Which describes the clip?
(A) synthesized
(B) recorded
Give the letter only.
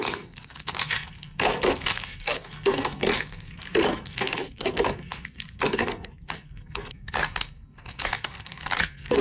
A